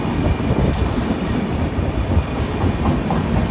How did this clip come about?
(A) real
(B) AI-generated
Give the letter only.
A